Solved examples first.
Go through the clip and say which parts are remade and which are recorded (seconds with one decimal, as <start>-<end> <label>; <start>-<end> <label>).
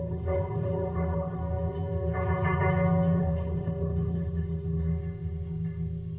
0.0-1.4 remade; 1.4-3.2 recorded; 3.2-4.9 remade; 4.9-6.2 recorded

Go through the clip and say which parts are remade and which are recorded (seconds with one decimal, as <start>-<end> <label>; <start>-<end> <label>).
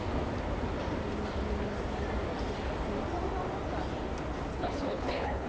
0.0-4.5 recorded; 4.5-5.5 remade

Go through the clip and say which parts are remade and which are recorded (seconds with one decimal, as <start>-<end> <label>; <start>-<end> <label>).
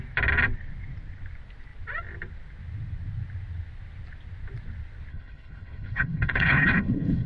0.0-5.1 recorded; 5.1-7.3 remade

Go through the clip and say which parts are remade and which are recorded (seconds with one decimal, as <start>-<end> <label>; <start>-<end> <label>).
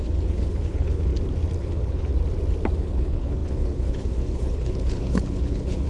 0.0-1.1 remade; 1.1-1.6 recorded; 1.6-2.1 remade; 2.1-2.8 recorded; 2.8-5.9 remade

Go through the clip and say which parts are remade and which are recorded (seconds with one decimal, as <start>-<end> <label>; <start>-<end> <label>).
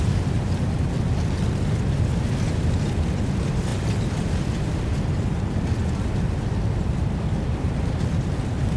0.0-8.8 recorded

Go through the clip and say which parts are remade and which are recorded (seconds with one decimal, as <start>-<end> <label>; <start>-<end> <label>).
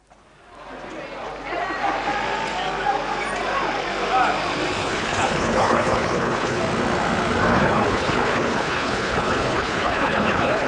0.0-4.8 recorded; 4.8-6.6 remade; 6.6-7.5 recorded; 7.5-10.7 remade